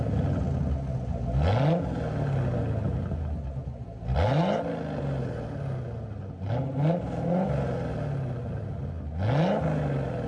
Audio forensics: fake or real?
real